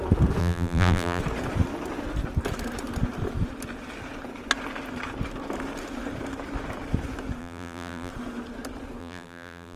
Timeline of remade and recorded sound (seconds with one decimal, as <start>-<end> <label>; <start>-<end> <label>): 0.0-0.4 recorded; 0.4-1.2 remade; 1.2-7.4 recorded; 7.4-8.1 remade; 8.1-9.0 recorded; 9.0-9.8 remade